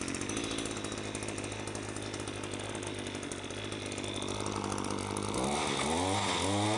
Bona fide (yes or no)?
yes